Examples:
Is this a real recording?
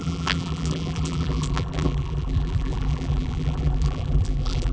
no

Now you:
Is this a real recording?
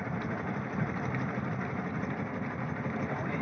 yes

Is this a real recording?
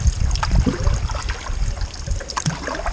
yes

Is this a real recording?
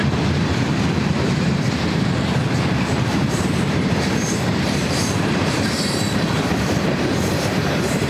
no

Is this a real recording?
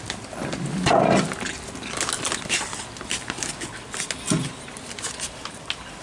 yes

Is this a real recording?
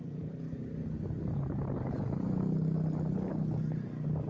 yes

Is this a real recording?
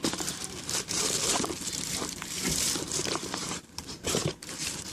no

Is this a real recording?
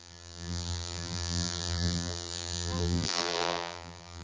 no